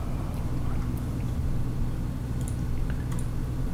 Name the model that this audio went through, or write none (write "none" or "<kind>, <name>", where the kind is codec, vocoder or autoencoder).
vocoder, BigVGAN v2